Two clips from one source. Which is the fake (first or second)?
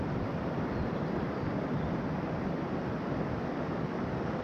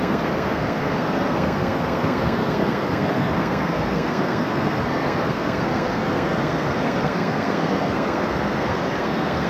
second